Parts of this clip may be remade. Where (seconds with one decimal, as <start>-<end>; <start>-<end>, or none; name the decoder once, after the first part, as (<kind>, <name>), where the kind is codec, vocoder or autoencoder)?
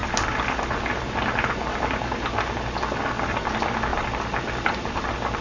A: 3.2-3.9 (vocoder, BigVGAN v2); 4.7-5.4